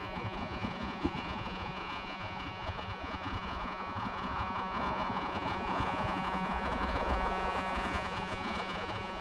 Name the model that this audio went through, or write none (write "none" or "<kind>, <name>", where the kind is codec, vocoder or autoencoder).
vocoder, Vocos